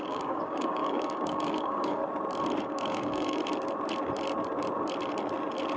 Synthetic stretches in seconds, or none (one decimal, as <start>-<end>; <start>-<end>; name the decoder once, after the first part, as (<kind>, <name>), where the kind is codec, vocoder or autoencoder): 0.0-2.0 (codec, DAC); 2.6-3.4